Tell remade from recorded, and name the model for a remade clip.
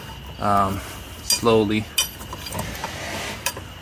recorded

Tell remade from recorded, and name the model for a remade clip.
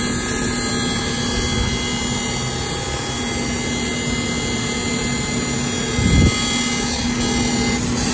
recorded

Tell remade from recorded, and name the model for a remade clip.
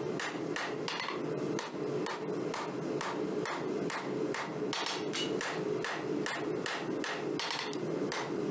recorded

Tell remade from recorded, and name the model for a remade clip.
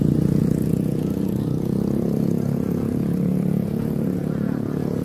remade, vocoder, Vocos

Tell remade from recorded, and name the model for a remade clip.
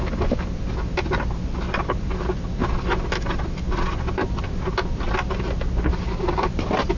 recorded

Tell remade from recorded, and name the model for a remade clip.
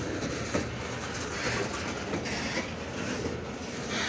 recorded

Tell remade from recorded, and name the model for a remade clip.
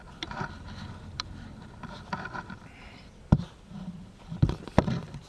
remade, vocoder, BigVGAN v2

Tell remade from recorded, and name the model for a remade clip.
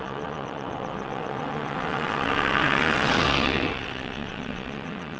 remade, vocoder, WaveNeXt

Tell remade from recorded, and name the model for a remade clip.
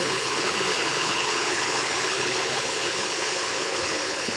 remade, codec, HILCodec